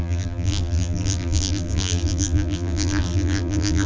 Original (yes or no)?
no